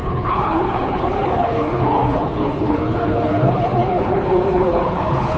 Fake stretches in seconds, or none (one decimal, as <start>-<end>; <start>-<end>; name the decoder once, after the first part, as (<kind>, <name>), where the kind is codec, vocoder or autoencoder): 0.0-5.4 (codec, HILCodec)